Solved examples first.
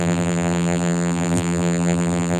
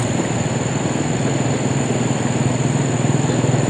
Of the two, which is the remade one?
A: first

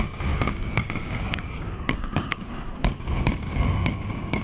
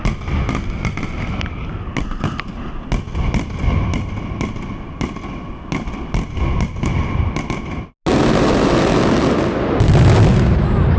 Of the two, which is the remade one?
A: first